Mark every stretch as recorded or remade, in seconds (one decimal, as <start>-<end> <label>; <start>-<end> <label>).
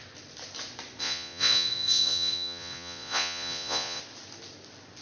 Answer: 0.0-1.0 recorded; 1.0-4.0 remade; 4.0-5.0 recorded